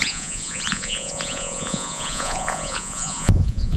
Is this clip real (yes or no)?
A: no